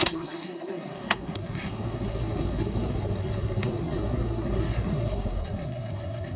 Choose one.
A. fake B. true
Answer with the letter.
A